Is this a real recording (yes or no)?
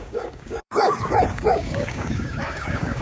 no